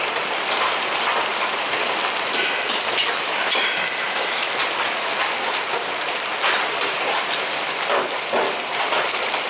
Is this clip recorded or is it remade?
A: recorded